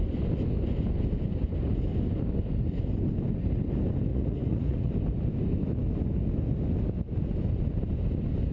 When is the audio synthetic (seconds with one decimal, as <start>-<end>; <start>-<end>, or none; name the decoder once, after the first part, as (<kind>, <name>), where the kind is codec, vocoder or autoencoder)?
4.1-4.9 (vocoder, Vocos)

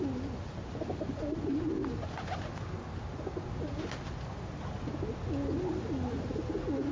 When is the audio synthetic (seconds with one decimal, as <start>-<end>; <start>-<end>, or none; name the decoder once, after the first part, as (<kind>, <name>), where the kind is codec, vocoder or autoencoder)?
none

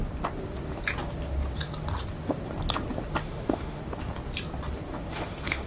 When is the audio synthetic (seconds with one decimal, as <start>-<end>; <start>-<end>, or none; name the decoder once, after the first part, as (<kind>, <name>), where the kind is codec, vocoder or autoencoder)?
3.2-3.8 (autoencoder, DAC-VAE); 5.1-5.7

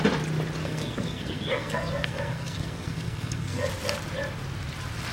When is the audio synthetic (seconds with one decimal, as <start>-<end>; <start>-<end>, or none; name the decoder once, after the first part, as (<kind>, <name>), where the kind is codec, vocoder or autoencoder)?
0.6-3.7 (codec, SNAC)

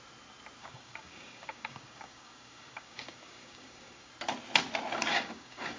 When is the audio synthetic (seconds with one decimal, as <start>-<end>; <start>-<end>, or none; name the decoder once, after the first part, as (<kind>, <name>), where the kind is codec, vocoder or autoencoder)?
0.6-4.1 (codec, DAC); 5.1-5.8